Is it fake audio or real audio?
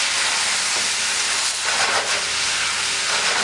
real